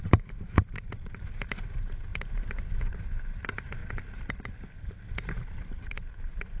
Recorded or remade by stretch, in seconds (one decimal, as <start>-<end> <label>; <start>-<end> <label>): 0.0-3.8 remade; 3.8-5.6 recorded; 5.6-6.6 remade